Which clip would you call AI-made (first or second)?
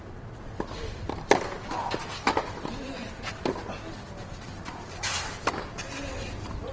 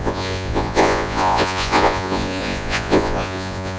second